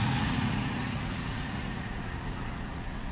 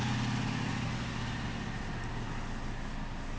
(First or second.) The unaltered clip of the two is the second